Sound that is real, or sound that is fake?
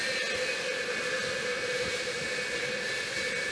real